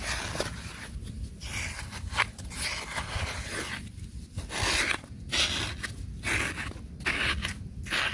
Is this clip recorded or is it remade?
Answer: recorded